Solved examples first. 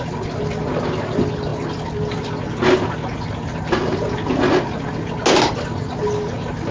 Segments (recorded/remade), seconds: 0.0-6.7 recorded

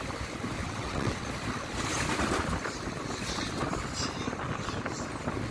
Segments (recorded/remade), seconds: 0.0-0.6 recorded; 0.6-1.3 remade; 1.3-5.5 recorded

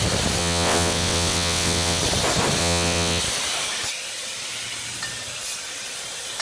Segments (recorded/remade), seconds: 0.0-0.4 recorded; 0.4-2.0 remade; 2.0-2.6 recorded; 2.6-3.2 remade; 3.2-6.4 recorded

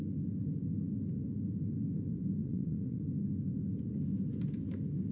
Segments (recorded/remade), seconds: 0.0-2.4 recorded; 2.4-3.0 remade; 3.0-5.1 recorded

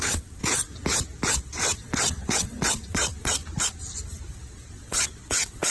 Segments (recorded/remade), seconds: 0.0-0.4 remade; 0.4-1.3 recorded; 1.3-3.4 remade; 3.4-4.3 recorded; 4.3-5.7 remade

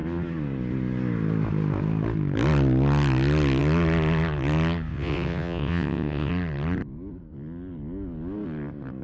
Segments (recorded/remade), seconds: 0.0-4.9 recorded; 4.9-6.3 remade; 6.3-9.0 recorded